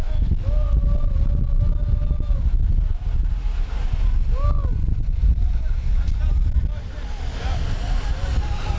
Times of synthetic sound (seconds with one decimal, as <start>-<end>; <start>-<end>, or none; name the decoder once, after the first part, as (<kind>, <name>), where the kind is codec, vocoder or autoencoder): 5.0-5.8 (vocoder, BigVGAN v2)